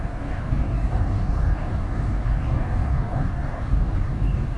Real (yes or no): no